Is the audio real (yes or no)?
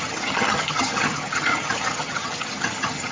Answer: no